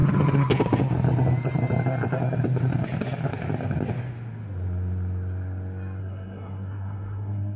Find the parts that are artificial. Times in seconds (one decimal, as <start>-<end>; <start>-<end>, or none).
6.0-7.6